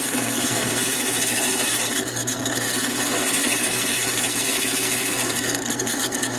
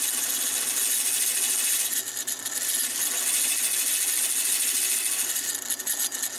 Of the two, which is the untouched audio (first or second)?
second